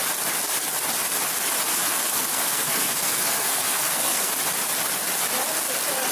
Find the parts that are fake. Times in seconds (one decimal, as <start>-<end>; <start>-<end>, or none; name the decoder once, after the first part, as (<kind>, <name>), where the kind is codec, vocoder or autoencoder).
1.7-4.3 (codec, SNAC)